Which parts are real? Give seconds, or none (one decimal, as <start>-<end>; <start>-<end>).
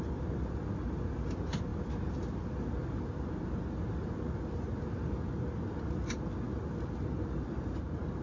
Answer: 0.0-8.2